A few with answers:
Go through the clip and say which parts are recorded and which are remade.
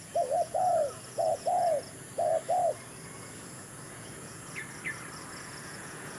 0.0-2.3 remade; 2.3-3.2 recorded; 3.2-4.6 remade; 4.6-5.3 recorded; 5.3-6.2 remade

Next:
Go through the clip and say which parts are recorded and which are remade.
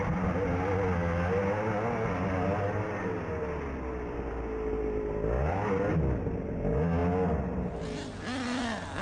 0.0-9.0 recorded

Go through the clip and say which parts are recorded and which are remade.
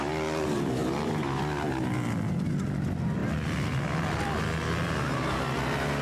0.0-6.0 recorded